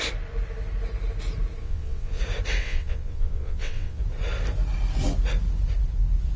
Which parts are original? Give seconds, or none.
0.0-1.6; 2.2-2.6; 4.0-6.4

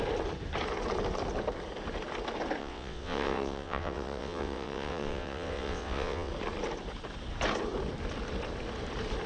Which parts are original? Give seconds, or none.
0.0-2.6; 6.3-9.3

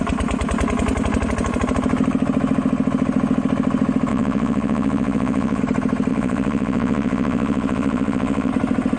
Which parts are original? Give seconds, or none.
0.0-4.1; 5.6-6.1; 8.5-9.0

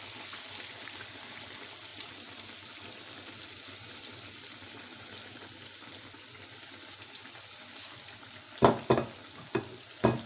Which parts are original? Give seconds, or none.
0.0-10.3

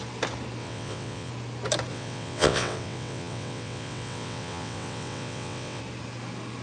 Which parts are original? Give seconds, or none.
0.0-0.6; 1.3-1.9; 5.8-6.6

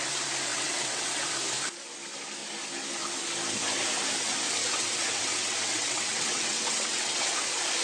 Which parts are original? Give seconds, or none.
0.0-0.5; 1.3-4.6; 7.3-7.8

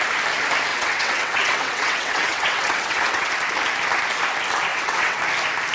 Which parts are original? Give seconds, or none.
0.0-0.7; 3.3-4.7; 5.2-5.7

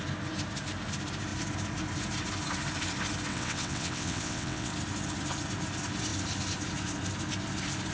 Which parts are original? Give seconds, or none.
0.0-3.3; 4.7-7.9